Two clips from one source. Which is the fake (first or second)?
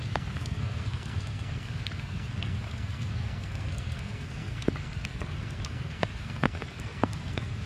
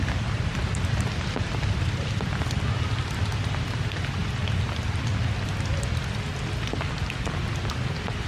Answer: first